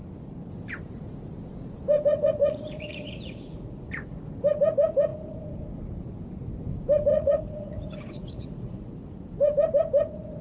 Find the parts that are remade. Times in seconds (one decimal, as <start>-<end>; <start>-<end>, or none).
2.1-4.2; 7.1-8.9